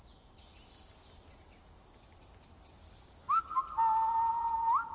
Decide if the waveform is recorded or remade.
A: recorded